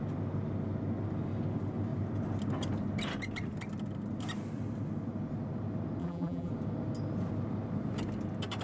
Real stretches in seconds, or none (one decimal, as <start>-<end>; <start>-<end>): 0.0-6.0; 6.5-8.6